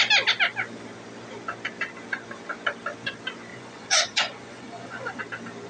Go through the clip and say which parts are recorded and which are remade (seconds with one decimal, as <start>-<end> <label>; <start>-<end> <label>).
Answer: 0.0-3.5 recorded; 3.5-5.2 remade; 5.2-5.7 recorded